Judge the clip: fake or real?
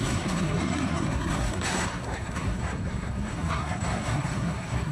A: fake